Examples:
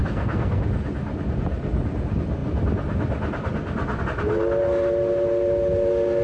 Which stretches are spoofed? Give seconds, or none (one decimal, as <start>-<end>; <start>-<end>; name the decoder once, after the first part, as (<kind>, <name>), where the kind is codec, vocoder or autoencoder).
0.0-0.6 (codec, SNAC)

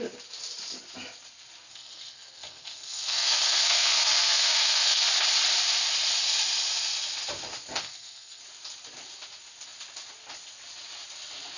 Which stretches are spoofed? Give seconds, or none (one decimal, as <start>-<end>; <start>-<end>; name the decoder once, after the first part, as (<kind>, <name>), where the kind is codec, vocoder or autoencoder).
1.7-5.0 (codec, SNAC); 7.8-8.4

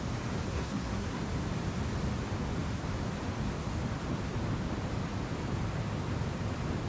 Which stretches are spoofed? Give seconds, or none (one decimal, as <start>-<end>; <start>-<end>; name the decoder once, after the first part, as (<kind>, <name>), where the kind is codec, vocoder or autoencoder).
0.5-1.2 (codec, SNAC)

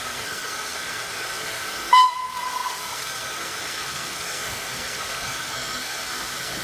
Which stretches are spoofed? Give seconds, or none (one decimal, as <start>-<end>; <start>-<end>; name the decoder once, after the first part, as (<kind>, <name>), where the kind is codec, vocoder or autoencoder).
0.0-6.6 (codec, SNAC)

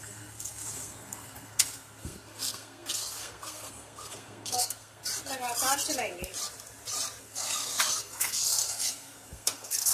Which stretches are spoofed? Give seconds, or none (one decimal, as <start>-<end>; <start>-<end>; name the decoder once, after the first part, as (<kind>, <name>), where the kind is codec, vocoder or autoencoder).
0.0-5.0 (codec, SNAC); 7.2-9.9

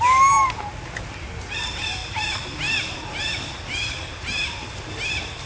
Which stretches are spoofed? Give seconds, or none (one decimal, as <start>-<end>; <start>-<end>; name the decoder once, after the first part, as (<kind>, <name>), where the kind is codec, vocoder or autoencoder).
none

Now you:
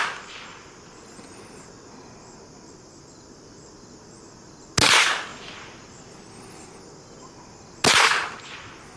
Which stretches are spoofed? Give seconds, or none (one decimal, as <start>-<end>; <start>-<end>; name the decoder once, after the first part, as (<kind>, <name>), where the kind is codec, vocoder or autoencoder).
none

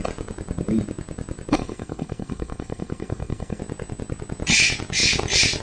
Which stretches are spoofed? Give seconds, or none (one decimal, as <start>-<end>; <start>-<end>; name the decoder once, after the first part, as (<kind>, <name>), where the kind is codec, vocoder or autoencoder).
1.5-3.6 (codec, SNAC)